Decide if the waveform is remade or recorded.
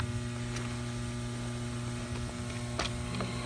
recorded